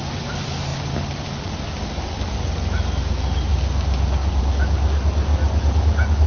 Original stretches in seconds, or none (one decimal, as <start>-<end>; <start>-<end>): 0.0-6.3